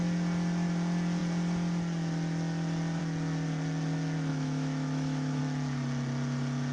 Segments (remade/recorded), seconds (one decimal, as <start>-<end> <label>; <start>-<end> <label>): 0.0-4.3 recorded; 4.3-5.4 remade; 5.4-6.7 recorded